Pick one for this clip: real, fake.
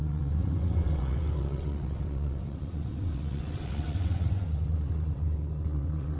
fake